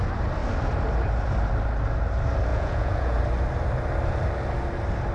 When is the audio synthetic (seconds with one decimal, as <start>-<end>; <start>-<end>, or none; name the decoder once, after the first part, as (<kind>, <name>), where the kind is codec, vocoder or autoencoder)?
2.5-3.2 (vocoder, Vocos)